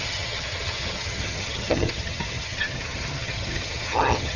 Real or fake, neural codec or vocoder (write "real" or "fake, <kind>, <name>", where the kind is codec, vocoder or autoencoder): fake, vocoder, HiFi-GAN